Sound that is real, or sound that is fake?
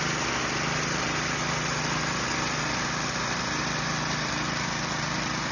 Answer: real